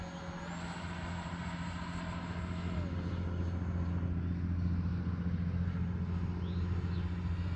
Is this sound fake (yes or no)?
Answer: no